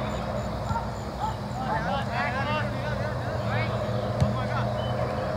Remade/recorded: recorded